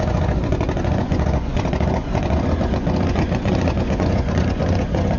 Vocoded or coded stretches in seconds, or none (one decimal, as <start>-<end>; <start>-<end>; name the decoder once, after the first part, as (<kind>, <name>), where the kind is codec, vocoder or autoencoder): 0.0-5.2 (vocoder, Vocos)